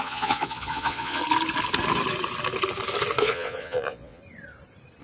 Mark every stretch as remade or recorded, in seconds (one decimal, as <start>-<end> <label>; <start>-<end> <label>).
0.0-1.2 remade; 1.2-3.2 recorded; 3.2-4.2 remade; 4.2-5.0 recorded